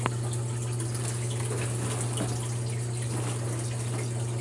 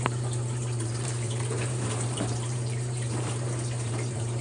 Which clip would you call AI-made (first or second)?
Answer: second